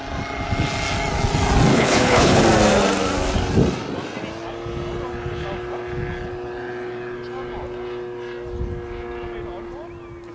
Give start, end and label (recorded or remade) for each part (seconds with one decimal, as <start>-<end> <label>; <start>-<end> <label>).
0.0-1.7 recorded; 1.7-2.4 remade; 2.4-10.3 recorded